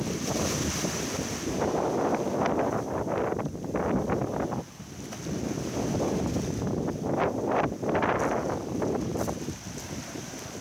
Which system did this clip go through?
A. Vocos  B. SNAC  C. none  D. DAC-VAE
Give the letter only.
C